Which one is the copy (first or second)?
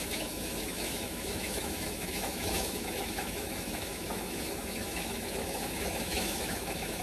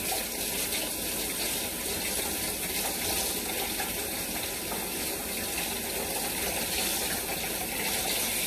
first